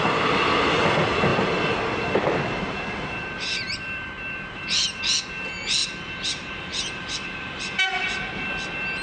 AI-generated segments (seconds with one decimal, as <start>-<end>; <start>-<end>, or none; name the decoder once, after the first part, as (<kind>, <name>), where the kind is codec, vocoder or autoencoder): 1.3-5.0 (vocoder, BigVGAN v2); 5.8-8.5